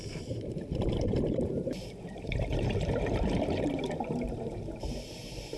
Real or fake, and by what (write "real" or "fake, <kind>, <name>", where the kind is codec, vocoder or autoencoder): fake, vocoder, BigVGAN v2